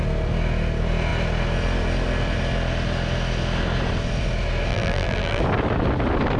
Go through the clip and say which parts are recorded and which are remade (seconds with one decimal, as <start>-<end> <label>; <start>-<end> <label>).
0.0-4.7 recorded; 4.7-5.4 remade; 5.4-6.4 recorded